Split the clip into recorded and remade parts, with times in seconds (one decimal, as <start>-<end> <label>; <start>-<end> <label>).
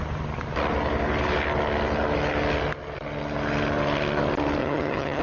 0.0-4.6 recorded; 4.6-5.2 remade